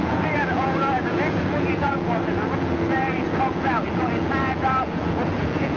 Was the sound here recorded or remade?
remade